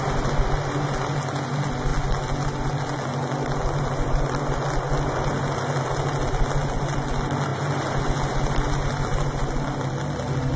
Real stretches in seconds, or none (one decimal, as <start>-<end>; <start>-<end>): 0.0-10.6